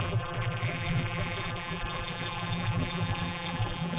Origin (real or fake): fake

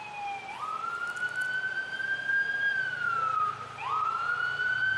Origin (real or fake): real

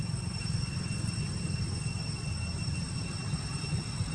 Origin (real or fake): real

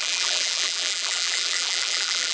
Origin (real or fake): fake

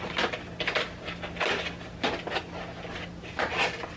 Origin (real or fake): real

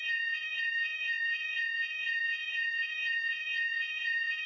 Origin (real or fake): fake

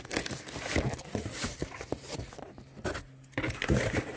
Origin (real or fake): real